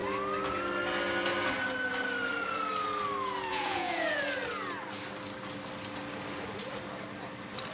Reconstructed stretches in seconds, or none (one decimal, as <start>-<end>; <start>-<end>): 3.5-4.2